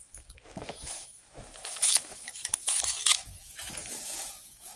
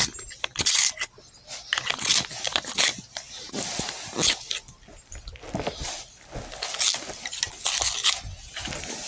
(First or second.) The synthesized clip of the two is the first